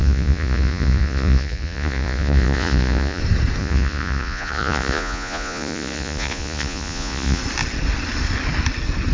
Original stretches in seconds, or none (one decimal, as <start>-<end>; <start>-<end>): 3.2-3.6; 7.4-9.1